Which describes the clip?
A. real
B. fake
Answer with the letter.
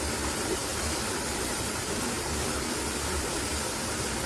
A